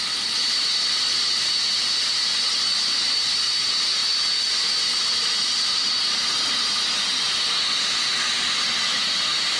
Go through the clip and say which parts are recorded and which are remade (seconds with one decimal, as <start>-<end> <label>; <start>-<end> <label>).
0.0-9.6 recorded